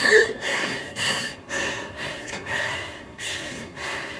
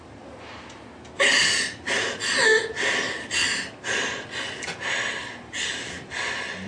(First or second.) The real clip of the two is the second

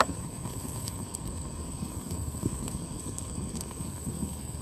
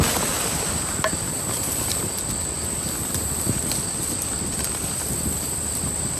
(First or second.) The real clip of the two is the second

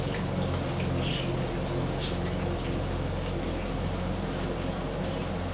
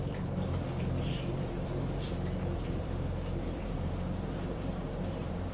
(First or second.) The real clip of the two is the first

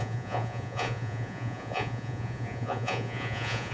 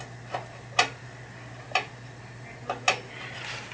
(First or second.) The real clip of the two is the second